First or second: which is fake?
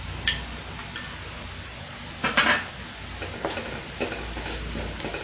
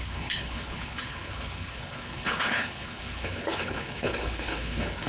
second